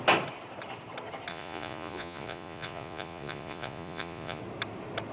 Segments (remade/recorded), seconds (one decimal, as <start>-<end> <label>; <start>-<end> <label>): 0.0-1.3 recorded; 1.3-4.4 remade; 4.4-5.1 recorded